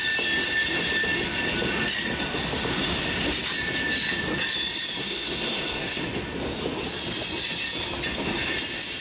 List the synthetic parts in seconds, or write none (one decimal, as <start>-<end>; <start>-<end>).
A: 5.0-6.0